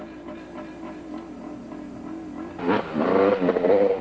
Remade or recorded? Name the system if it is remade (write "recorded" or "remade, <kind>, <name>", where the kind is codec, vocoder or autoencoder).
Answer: recorded